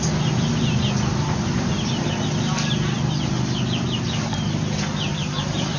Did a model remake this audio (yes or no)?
no